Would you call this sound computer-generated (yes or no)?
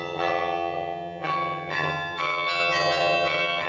yes